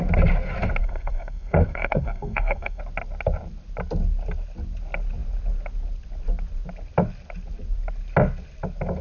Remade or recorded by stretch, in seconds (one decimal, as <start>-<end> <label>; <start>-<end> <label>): 0.0-0.8 recorded; 0.8-2.8 remade; 2.8-9.0 recorded